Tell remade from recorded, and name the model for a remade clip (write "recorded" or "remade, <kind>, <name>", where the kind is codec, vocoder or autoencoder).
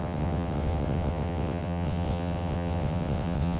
remade, vocoder, WaveNeXt